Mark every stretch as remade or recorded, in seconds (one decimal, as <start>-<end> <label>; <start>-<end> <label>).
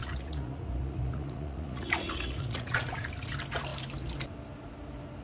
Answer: 0.0-3.1 remade; 3.1-5.2 recorded